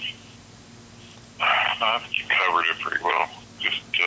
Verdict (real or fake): real